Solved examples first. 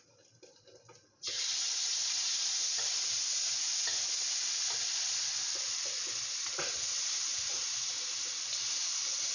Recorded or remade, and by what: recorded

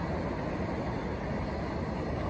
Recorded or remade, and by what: recorded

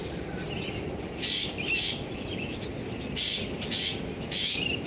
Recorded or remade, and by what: recorded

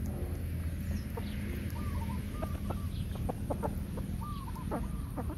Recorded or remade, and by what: recorded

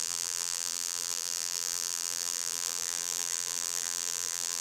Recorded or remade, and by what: remade, vocoder, BigVGAN v2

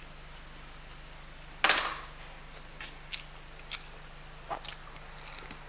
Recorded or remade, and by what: recorded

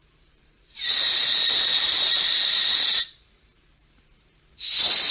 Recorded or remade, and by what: remade, vocoder, BigVGAN v2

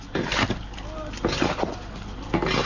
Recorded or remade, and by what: recorded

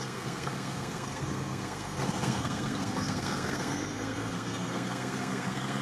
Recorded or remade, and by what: remade, codec, SNAC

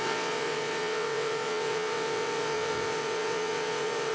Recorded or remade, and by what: remade, vocoder, WaveNeXt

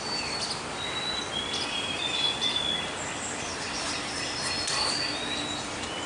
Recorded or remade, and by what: recorded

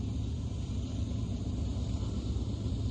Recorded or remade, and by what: remade, vocoder, BigVGAN v2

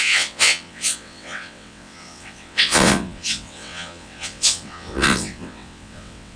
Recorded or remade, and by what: remade, vocoder, WaveNeXt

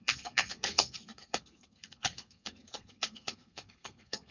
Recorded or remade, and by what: remade, codec, SNAC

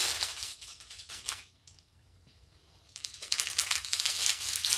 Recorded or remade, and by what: remade, codec, SNAC